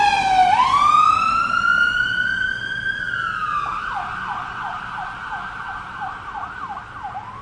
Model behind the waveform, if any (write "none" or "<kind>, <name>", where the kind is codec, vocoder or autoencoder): none